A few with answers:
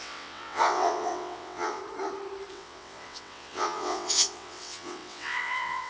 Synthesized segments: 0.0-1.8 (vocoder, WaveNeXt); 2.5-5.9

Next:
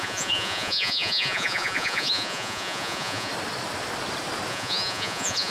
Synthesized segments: 0.0-3.3 (vocoder, Vocos); 4.5-5.5

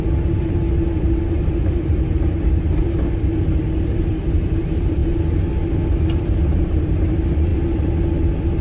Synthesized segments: 0.0-5.0 (vocoder, BigVGAN v2); 6.2-7.5

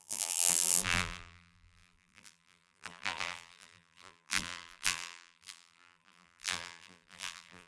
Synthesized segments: 0.0-7.7 (vocoder, BigVGAN v2)

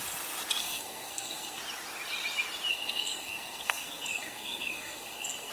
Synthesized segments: 0.6-1.6 (codec, SNAC); 2.7-5.5

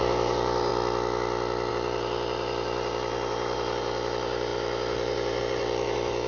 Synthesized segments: 0.0-0.7 (vocoder, BigVGAN v2); 1.7-6.3